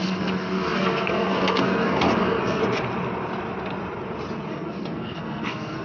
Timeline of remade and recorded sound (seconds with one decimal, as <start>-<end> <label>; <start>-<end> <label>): 0.0-2.6 remade; 2.6-4.5 recorded; 4.5-5.8 remade